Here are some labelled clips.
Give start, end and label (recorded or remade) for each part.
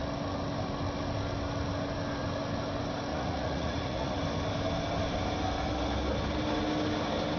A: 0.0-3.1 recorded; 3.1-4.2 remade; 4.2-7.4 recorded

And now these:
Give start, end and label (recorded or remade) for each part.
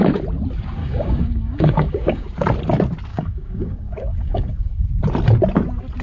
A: 0.0-0.8 recorded; 0.8-2.3 remade; 2.3-3.1 recorded; 3.1-4.9 remade; 4.9-6.0 recorded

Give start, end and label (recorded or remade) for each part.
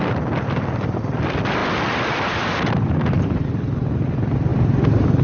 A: 0.0-1.6 recorded; 1.6-3.2 remade; 3.2-4.5 recorded; 4.5-5.2 remade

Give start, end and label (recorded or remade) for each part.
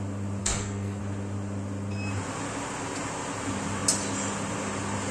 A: 0.0-0.4 recorded; 0.4-1.0 remade; 1.0-5.1 recorded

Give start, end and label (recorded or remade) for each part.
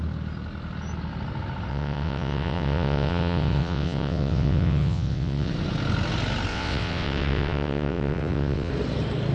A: 0.0-1.7 recorded; 1.7-5.5 remade; 5.5-6.5 recorded; 6.5-8.7 remade; 8.7-9.3 recorded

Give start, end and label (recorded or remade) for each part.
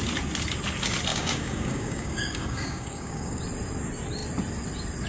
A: 0.0-1.1 recorded; 1.1-3.4 remade; 3.4-5.1 recorded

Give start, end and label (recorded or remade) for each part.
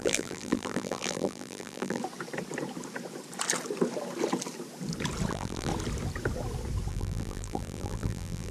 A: 0.0-2.0 remade; 2.0-5.3 recorded; 5.3-5.7 remade; 5.7-6.9 recorded; 6.9-8.5 remade